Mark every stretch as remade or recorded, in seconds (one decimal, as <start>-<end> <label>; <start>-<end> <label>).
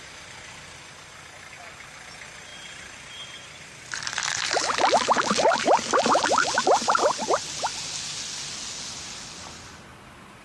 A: 0.0-2.5 recorded; 2.5-7.0 remade; 7.0-10.4 recorded